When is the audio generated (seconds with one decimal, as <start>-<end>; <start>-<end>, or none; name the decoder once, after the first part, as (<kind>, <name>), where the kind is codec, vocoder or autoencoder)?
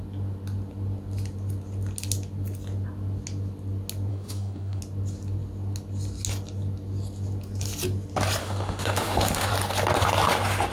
4.1-4.8 (autoencoder, DAC-VAE); 8.4-9.5